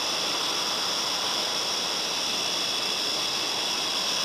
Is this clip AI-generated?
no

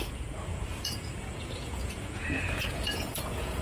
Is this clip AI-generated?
yes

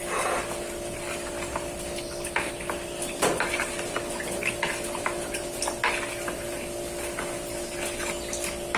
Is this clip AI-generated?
no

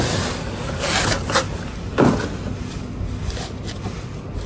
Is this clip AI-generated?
no